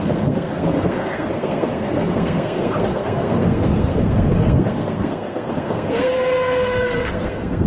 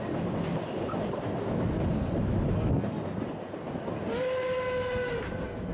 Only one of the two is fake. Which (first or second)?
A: first